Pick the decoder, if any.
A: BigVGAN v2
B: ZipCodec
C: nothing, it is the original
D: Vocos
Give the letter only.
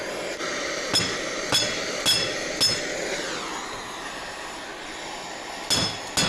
C